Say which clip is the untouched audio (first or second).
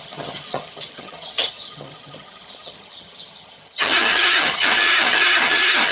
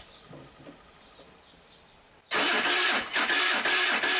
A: second